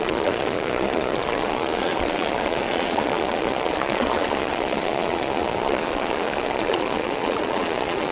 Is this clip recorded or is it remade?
remade